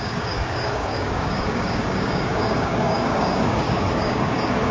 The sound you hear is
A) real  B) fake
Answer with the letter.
B